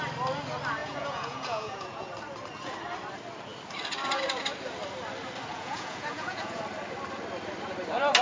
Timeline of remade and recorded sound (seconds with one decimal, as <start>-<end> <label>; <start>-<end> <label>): 0.0-0.8 recorded; 0.8-2.1 remade; 2.1-5.5 recorded; 5.5-6.6 remade; 6.6-8.2 recorded